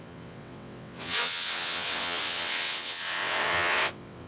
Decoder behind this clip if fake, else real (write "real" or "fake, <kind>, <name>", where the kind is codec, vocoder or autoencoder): fake, vocoder, WaveNeXt